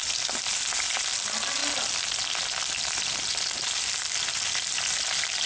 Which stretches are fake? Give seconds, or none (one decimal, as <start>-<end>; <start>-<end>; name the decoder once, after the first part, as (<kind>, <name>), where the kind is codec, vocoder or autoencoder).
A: none

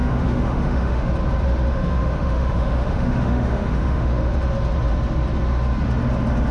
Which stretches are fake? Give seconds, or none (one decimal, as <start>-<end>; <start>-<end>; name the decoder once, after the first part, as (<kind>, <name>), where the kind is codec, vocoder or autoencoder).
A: 0.0-1.1 (autoencoder, DAC-VAE); 1.7-4.2

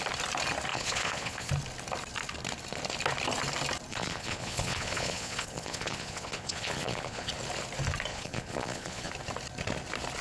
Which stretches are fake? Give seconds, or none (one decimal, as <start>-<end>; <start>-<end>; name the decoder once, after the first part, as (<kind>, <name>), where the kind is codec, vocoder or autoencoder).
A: 0.7-1.5 (vocoder, Vocos); 3.9-7.3; 8.1-9.1

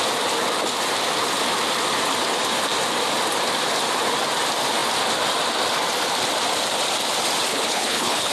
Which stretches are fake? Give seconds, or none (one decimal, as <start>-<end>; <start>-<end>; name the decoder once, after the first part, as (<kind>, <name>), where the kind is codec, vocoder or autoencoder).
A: 7.5-8.3 (codec, HILCodec)

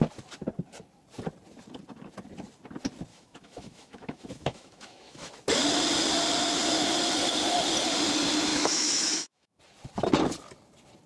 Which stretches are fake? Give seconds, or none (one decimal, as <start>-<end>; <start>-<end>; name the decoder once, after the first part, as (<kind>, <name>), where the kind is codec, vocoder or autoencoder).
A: 3.1-5.3 (autoencoder, DAC-VAE); 8.5-9.6